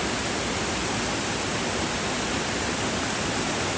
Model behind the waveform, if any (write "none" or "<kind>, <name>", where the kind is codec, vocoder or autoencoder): none